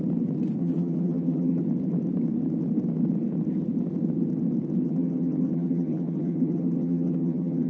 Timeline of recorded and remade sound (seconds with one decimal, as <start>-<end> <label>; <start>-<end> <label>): 0.0-0.6 recorded; 0.6-1.6 remade; 1.6-4.8 recorded; 4.8-7.7 remade